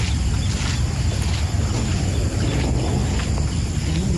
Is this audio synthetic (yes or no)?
no